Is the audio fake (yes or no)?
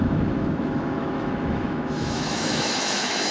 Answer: yes